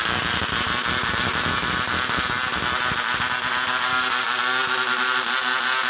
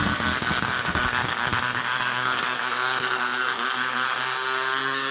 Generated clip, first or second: second